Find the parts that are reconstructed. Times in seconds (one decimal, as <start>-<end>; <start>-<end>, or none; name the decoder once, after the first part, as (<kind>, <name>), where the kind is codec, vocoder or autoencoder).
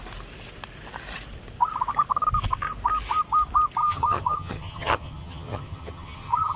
3.8-6.6 (vocoder, HiFi-GAN)